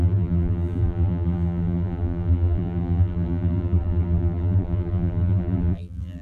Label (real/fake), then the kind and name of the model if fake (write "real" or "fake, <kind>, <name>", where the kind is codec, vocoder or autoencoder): fake, vocoder, BigVGAN v2